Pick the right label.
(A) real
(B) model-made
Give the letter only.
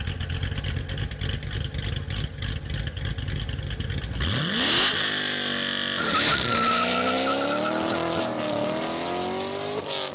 A